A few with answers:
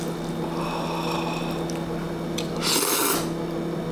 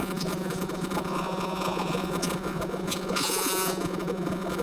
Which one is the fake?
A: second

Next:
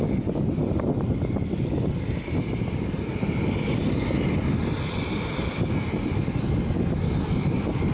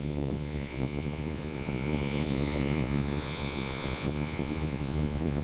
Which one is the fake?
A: second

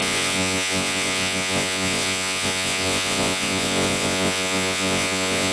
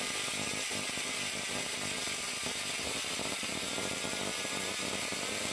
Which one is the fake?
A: first